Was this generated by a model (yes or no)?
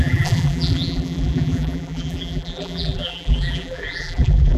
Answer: yes